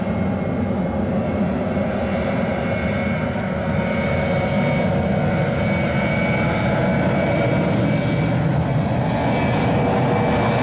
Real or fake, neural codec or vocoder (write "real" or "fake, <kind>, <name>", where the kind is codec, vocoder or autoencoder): real